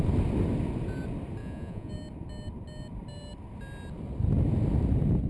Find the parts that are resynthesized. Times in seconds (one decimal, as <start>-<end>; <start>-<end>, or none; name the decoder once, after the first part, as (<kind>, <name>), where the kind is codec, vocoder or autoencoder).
1.4-1.9 (vocoder, Vocos)